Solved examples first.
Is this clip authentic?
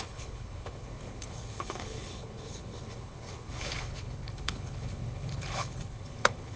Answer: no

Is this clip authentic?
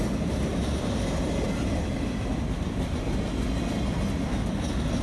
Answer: yes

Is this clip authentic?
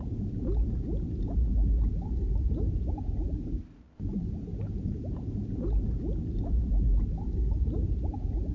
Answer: no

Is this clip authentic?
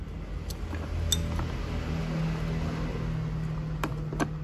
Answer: yes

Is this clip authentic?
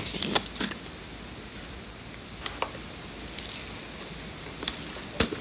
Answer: yes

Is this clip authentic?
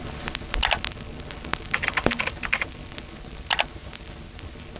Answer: yes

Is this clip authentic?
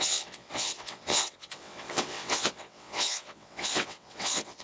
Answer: no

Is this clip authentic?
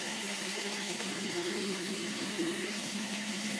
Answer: no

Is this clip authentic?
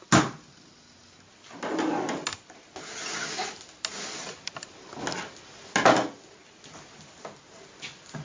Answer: yes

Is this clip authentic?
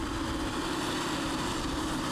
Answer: no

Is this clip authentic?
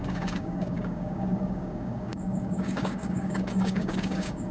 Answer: no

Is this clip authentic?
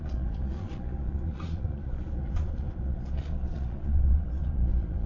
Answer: no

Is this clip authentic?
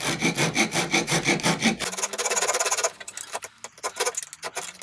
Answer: yes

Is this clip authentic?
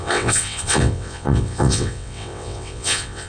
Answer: no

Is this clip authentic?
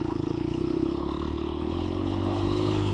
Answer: no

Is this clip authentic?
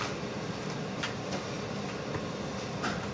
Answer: yes